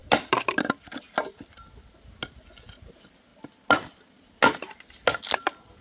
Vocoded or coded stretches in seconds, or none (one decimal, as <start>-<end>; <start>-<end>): none